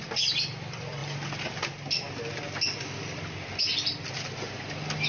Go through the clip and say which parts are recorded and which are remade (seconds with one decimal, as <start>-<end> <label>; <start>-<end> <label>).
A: 0.0-5.1 recorded